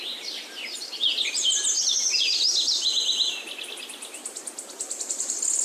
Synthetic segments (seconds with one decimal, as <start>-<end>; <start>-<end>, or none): none